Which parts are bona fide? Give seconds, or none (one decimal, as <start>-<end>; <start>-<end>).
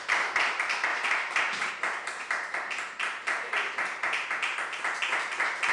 0.0-0.9; 1.7-5.7